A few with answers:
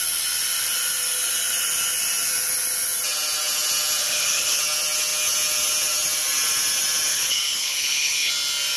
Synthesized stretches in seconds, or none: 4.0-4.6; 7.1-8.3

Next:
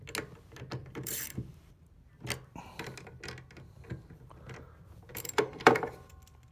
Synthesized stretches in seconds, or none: 0.8-1.8; 5.1-6.1

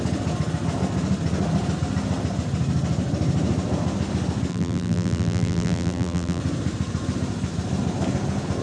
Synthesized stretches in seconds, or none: 4.5-6.4